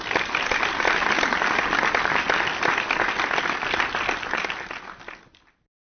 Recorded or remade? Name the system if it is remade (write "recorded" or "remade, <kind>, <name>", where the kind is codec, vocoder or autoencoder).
recorded